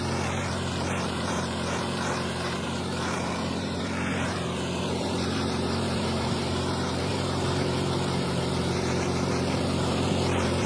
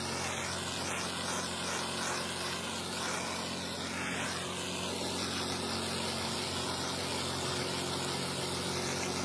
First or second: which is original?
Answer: second